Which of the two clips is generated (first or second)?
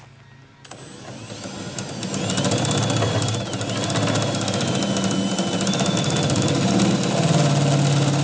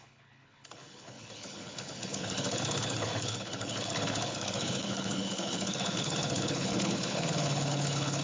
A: second